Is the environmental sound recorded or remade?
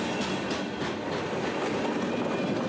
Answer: recorded